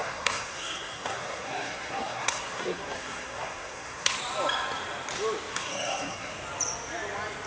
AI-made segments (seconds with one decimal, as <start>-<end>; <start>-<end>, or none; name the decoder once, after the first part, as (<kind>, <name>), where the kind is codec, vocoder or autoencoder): 0.0-4.1 (codec, SNAC); 5.5-6.3